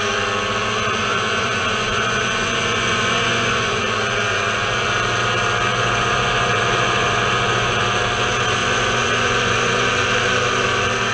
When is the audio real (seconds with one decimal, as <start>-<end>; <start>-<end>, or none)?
0.0-1.0; 4.9-5.7; 7.8-8.6; 9.9-11.1